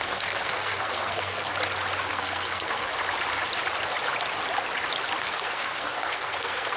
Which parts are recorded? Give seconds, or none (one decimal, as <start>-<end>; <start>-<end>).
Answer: 1.5-2.1; 2.9-5.2